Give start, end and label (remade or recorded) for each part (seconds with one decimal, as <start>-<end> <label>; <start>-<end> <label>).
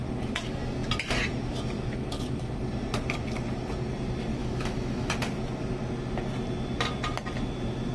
0.0-4.4 recorded; 4.4-5.1 remade; 5.1-7.9 recorded